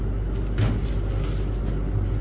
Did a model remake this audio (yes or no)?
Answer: no